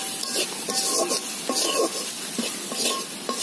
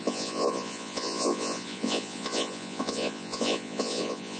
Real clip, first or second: first